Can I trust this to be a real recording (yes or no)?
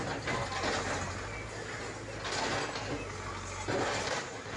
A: yes